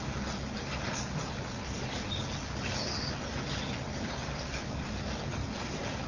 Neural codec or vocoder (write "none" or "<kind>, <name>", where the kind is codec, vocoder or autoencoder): none